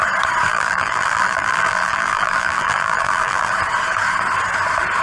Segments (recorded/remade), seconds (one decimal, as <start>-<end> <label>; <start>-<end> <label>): 0.0-0.5 recorded; 0.5-3.5 remade; 3.5-5.0 recorded